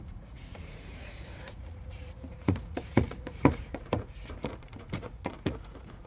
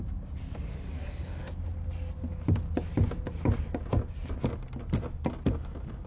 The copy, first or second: first